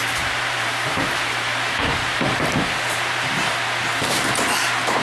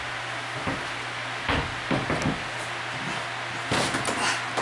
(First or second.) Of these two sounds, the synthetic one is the first